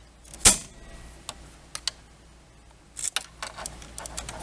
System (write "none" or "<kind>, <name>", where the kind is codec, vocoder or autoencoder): none